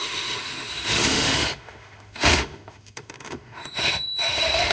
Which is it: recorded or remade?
remade